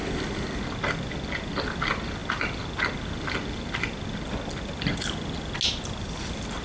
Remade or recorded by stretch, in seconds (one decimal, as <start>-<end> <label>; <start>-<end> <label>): 0.0-6.6 recorded